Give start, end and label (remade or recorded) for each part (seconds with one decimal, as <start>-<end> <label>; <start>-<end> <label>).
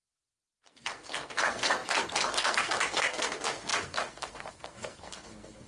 0.0-5.7 remade